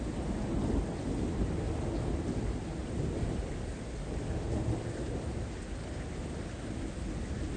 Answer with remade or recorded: recorded